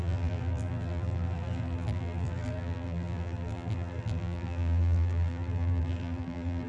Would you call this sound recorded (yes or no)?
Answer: no